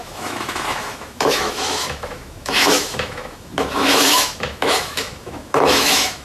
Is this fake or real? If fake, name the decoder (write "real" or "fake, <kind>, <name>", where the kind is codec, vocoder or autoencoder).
fake, autoencoder, DAC-VAE